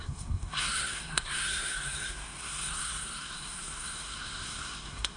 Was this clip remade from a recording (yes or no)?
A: yes